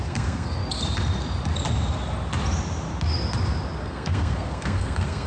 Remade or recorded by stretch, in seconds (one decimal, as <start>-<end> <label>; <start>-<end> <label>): 0.0-0.6 remade; 0.6-3.8 recorded; 3.8-5.3 remade